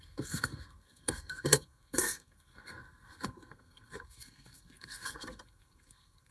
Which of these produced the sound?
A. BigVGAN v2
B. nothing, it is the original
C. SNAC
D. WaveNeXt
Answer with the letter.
C